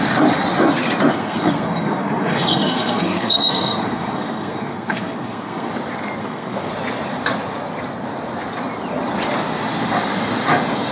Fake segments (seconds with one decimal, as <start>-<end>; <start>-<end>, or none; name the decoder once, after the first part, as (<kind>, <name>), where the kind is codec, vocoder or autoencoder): 1.1-5.7 (codec, SNAC); 6.2-6.7